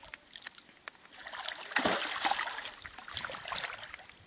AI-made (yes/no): no